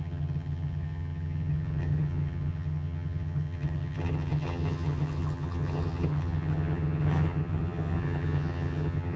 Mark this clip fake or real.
fake